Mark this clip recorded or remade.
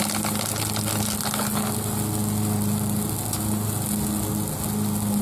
recorded